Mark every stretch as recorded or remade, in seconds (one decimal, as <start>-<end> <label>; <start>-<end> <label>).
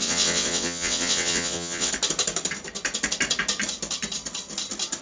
0.0-1.9 remade; 1.9-5.0 recorded